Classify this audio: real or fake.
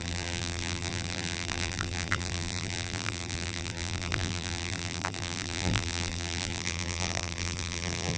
fake